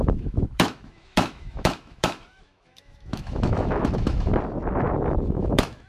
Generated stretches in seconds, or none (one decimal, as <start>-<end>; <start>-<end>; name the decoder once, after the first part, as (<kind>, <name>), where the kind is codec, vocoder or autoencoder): 0.0-4.3 (autoencoder, DAC-VAE); 5.2-5.9